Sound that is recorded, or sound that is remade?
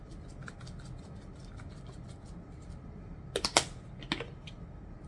recorded